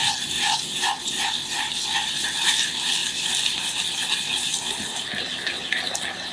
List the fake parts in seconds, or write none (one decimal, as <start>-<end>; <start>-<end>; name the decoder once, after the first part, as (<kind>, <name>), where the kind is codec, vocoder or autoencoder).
none